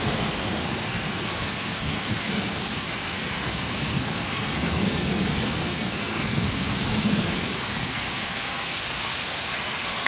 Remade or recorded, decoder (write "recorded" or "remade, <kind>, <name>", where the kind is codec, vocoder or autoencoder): remade, codec, SNAC